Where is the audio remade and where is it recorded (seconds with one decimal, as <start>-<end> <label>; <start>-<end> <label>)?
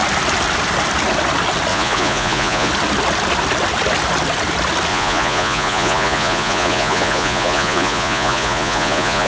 0.0-1.7 recorded; 1.7-2.7 remade; 2.7-4.9 recorded; 4.9-9.3 remade